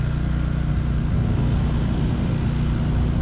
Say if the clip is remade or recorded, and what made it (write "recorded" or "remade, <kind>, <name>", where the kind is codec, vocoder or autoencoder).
recorded